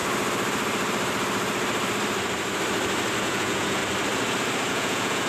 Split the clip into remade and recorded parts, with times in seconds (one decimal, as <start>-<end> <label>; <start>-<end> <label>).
0.0-3.2 recorded; 3.2-3.8 remade; 3.8-4.7 recorded; 4.7-5.3 remade